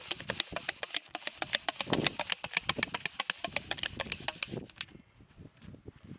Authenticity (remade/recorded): recorded